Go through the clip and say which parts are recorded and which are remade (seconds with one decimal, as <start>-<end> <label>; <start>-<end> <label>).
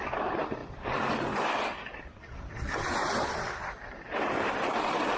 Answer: 0.0-5.2 recorded